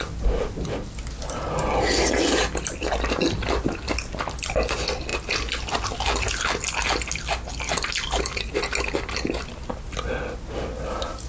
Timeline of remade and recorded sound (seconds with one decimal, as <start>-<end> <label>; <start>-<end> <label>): 0.0-11.3 recorded